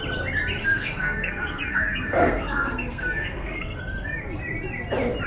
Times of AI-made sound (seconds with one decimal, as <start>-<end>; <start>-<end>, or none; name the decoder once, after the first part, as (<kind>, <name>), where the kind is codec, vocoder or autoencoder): 0.6-3.8 (codec, SNAC)